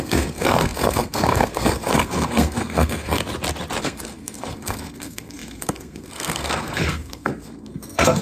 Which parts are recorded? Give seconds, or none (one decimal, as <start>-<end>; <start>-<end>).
3.2-3.8